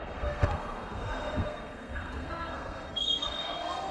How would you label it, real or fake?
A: fake